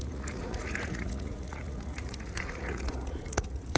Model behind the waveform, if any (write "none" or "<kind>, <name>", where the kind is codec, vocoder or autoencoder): vocoder, Vocos